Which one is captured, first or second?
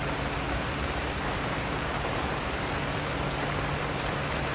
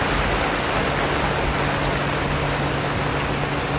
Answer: second